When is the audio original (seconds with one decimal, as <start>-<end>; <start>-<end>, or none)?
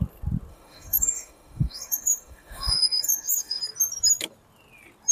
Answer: 0.0-0.5; 3.6-5.1